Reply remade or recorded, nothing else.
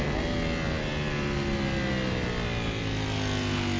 recorded